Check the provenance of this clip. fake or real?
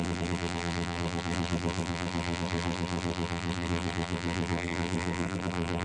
fake